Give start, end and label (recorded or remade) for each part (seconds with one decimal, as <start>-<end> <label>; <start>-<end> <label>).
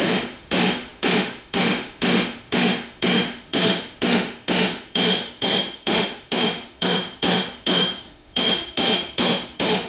0.0-9.9 remade